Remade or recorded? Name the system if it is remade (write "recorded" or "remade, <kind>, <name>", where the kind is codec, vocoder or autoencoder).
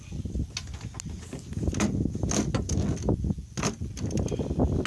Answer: recorded